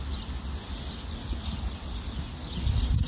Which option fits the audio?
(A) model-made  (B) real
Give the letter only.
B